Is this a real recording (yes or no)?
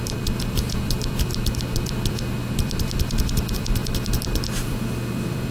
no